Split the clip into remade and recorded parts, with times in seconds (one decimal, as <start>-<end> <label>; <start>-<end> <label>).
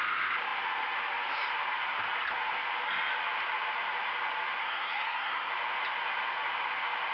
0.0-4.6 recorded; 4.6-5.5 remade; 5.5-7.1 recorded